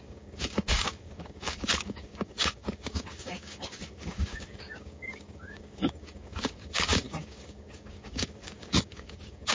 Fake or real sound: fake